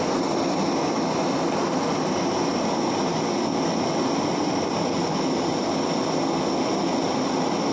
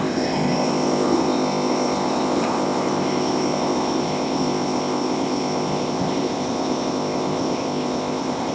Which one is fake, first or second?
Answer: second